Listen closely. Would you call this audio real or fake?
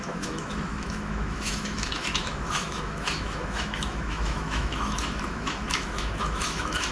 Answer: fake